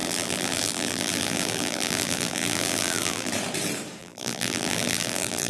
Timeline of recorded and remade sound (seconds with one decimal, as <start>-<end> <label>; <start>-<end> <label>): 0.0-3.3 remade; 3.3-4.0 recorded; 4.0-5.5 remade